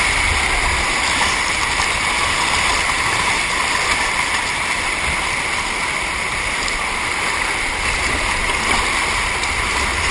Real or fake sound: real